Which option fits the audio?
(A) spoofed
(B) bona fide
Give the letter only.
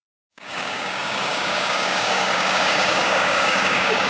A